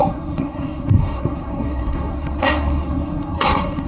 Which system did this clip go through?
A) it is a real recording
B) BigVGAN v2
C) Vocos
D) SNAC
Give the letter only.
D